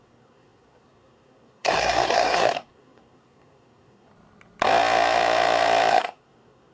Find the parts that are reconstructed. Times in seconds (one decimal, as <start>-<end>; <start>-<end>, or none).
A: 0.0-4.1; 5.9-6.7